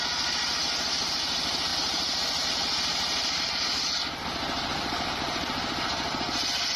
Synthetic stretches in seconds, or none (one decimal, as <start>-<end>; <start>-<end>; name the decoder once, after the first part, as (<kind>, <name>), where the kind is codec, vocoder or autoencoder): none